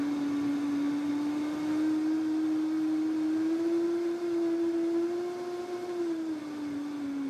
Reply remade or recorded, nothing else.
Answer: recorded